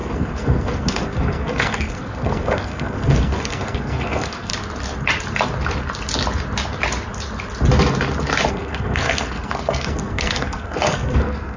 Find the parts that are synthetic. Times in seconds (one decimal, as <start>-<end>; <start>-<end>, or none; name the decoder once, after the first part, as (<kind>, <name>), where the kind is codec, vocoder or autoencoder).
0.0-4.5 (codec, SNAC); 8.5-11.6